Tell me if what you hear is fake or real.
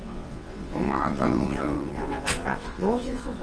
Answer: fake